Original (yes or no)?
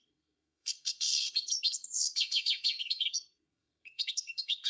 no